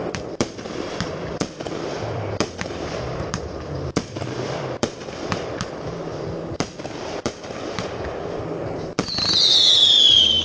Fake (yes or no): yes